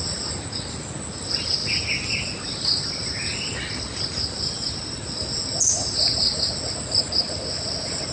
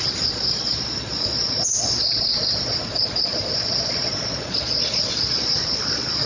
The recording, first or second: first